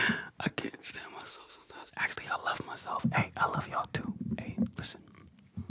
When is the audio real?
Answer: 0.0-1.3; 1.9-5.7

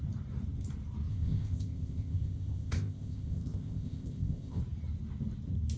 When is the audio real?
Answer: 0.0-1.1; 4.6-5.8

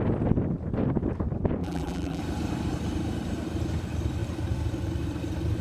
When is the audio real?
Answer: 0.0-1.6; 2.2-5.6

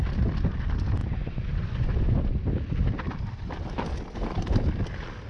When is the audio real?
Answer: 0.0-1.0; 2.2-5.3

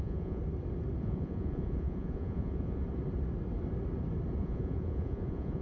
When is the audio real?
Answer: 0.4-1.0; 2.8-4.4

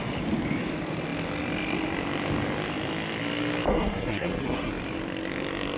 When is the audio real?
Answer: 0.0-3.7; 4.7-5.8